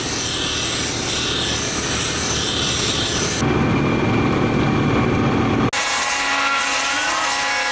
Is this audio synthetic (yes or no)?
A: no